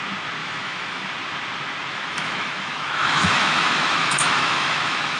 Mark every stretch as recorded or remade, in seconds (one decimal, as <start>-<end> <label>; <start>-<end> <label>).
0.0-0.4 recorded; 0.4-1.1 remade; 1.1-1.9 recorded; 1.9-5.2 remade